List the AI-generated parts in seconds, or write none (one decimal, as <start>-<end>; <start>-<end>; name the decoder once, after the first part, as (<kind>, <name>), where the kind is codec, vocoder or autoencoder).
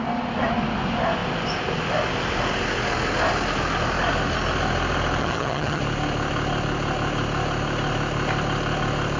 5.2-5.8 (vocoder, HiFi-GAN)